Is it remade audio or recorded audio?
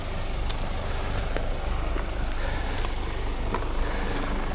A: recorded